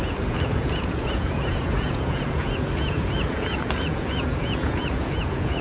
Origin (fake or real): fake